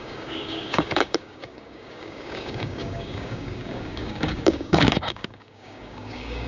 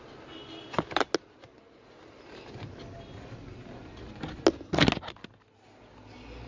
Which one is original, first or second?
second